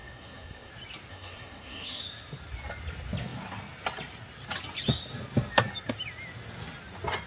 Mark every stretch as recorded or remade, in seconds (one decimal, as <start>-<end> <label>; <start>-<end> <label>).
0.0-0.7 remade; 0.7-1.1 recorded; 1.1-2.0 remade; 2.0-7.3 recorded